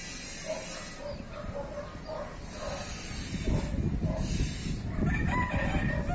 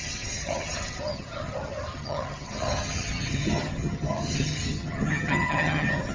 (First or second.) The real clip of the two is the first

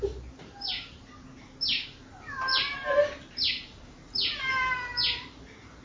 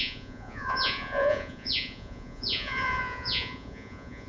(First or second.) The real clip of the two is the first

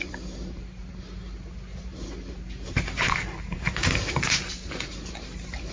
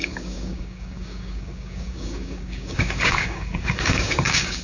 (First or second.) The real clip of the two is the first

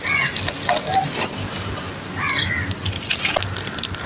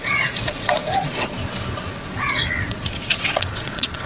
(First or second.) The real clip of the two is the first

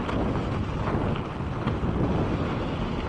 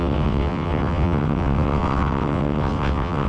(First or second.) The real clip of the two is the first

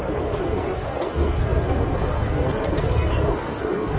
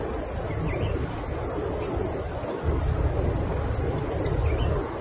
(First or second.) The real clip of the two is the second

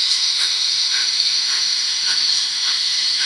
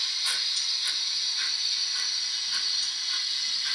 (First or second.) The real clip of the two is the second